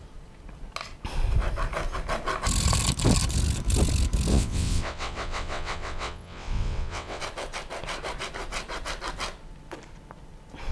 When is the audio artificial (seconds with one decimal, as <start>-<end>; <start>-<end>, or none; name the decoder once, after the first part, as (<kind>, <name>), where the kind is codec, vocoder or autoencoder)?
4.3-7.2 (vocoder, WaveNeXt)